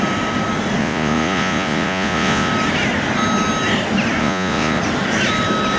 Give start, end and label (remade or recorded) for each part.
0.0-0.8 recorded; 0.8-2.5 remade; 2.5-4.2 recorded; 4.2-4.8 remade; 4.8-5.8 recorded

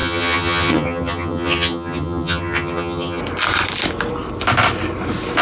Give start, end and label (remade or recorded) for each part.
0.0-3.2 remade; 3.2-5.4 recorded